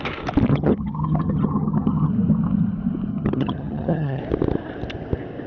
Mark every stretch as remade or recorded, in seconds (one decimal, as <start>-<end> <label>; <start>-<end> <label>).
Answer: 0.0-0.5 recorded; 0.5-2.1 remade; 2.1-3.1 recorded; 3.1-4.2 remade; 4.2-5.5 recorded